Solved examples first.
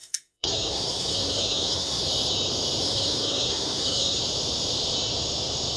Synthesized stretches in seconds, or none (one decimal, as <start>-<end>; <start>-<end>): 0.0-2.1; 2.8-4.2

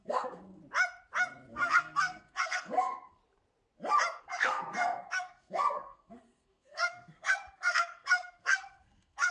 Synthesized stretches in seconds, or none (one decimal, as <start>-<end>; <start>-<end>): 0.0-0.6; 1.5-3.2; 4.2-9.3

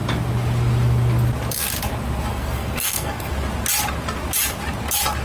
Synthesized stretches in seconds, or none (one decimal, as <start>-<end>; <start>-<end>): 2.3-3.3

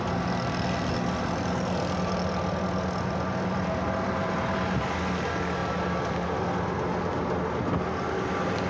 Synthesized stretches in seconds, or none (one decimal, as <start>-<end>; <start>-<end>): none

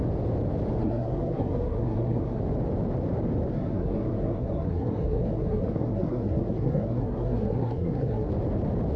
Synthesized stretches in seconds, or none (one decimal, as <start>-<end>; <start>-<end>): 0.8-2.4; 3.5-8.3

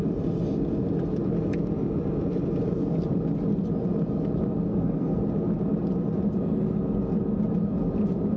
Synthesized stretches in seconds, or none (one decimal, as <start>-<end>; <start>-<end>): 4.7-5.2

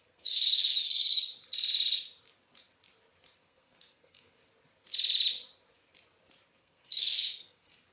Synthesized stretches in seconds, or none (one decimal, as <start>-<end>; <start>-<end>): 0.0-1.3; 3.4-4.4; 6.6-7.9